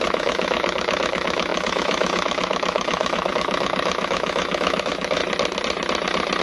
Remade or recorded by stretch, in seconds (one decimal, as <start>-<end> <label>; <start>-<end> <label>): 0.0-5.2 remade; 5.2-6.4 recorded